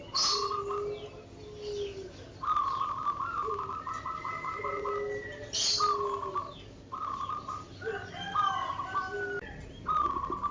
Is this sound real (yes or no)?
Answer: yes